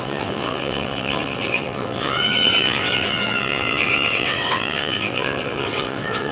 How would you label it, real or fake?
fake